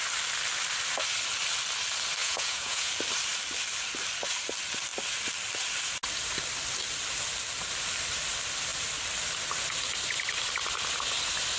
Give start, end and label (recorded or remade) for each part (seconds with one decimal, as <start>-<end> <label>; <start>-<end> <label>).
0.0-2.2 recorded; 2.2-2.9 remade; 2.9-11.6 recorded